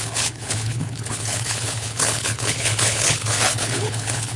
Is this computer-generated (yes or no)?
yes